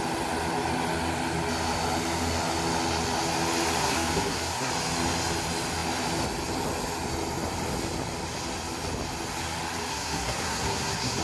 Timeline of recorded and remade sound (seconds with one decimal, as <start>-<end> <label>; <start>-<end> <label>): 0.0-3.8 recorded; 3.8-4.7 remade; 4.7-9.9 recorded; 9.9-11.2 remade